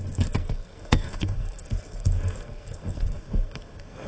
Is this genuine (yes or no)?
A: no